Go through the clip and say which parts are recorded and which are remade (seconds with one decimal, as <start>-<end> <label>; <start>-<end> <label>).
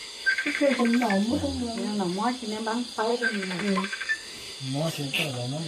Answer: 0.0-0.8 remade; 0.8-3.1 recorded; 3.1-4.9 remade; 4.9-5.7 recorded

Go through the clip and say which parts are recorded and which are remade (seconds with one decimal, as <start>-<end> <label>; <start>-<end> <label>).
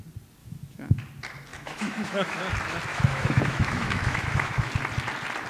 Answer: 0.0-0.4 recorded; 0.4-1.0 remade; 1.0-1.5 recorded; 1.5-2.4 remade; 2.4-2.9 recorded; 2.9-4.7 remade; 4.7-5.5 recorded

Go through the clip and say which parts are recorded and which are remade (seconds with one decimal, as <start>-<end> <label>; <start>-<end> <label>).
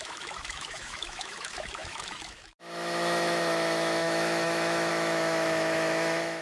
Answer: 0.0-6.4 remade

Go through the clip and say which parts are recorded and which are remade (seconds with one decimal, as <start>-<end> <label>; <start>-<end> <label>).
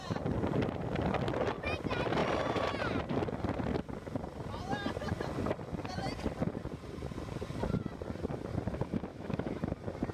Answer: 0.0-9.1 recorded; 9.1-9.7 remade; 9.7-10.1 recorded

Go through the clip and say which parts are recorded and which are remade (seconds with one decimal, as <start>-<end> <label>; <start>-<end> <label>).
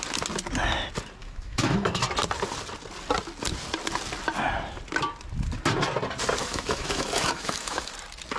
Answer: 0.0-1.2 recorded; 1.2-2.0 remade; 2.0-6.4 recorded; 6.4-7.9 remade; 7.9-8.4 recorded